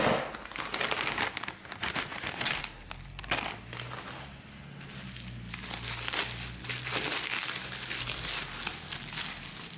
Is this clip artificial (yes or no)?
no